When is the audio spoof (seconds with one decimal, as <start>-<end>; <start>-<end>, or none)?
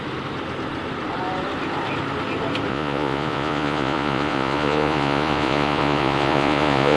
2.7-7.0